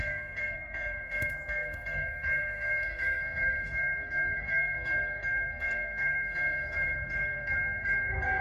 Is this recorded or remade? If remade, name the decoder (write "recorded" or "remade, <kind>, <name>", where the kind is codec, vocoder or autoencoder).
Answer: remade, codec, SNAC